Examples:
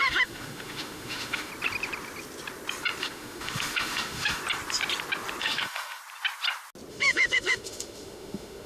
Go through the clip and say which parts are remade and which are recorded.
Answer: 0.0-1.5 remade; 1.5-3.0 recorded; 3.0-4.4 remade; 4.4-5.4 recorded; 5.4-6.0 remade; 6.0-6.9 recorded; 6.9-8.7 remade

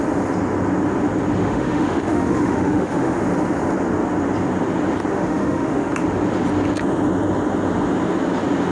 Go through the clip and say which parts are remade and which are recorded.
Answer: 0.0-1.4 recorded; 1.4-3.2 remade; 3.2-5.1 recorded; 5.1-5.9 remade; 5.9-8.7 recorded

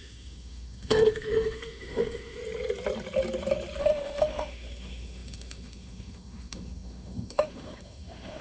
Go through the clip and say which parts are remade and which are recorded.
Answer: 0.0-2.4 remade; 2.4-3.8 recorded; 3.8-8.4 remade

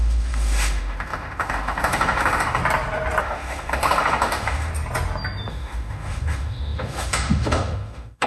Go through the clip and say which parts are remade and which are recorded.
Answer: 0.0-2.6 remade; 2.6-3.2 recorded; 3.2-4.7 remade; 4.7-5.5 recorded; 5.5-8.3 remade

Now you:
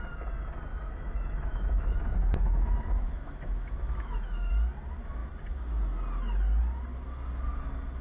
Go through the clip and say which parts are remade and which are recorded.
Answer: 0.0-0.7 recorded; 0.7-4.5 remade; 4.5-8.0 recorded

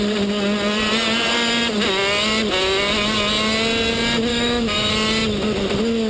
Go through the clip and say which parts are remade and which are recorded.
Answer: 0.0-4.3 recorded; 4.3-4.9 remade; 4.9-6.1 recorded

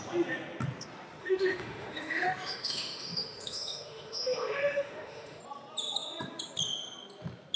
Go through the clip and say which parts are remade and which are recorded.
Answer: 0.0-1.2 recorded; 1.2-5.4 remade; 5.4-7.6 recorded